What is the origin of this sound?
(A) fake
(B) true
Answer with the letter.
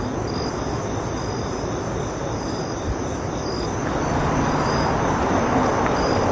B